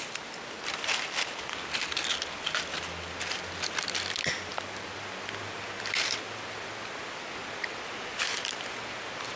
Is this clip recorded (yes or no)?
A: yes